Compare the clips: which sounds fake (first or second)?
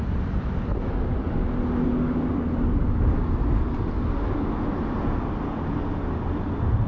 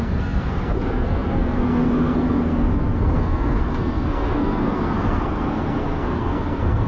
second